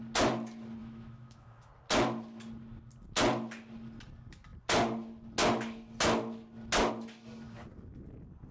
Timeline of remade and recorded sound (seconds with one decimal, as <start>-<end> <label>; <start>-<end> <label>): 0.0-0.8 recorded; 0.8-1.7 remade; 1.7-8.5 recorded

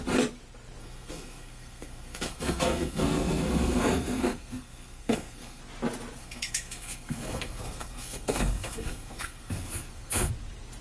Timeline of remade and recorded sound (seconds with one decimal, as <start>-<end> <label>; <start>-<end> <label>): 0.0-0.8 recorded; 0.8-5.6 remade; 5.6-6.2 recorded; 6.2-10.3 remade; 10.3-10.8 recorded

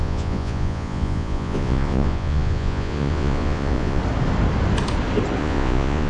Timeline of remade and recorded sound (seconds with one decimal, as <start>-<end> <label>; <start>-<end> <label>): 0.0-4.0 remade; 4.0-5.4 recorded; 5.4-6.1 remade